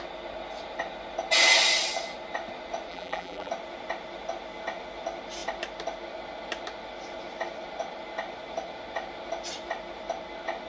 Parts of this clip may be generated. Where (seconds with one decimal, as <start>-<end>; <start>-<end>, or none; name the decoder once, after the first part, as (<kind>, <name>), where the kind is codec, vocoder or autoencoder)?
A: 2.9-3.5 (vocoder, BigVGAN v2)